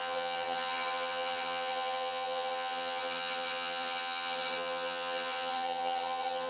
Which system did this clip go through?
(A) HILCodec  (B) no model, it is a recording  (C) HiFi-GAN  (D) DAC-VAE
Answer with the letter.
C